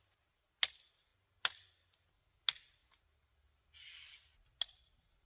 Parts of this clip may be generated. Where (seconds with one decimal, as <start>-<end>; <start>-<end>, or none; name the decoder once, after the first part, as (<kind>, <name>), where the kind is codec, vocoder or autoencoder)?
none